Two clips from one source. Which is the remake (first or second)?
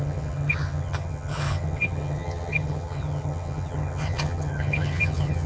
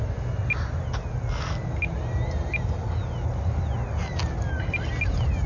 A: first